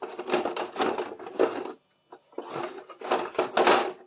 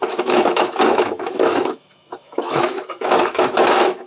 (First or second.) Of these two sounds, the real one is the first